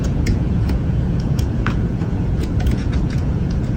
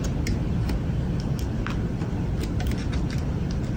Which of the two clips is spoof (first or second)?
first